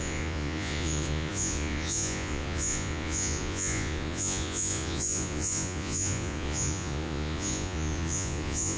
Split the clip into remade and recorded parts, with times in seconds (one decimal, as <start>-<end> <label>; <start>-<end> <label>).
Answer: 0.0-8.8 remade